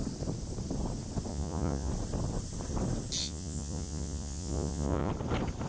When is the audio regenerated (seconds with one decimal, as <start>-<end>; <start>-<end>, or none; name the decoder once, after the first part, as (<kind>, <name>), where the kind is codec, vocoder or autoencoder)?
1.3-1.9 (vocoder, Vocos); 3.2-5.1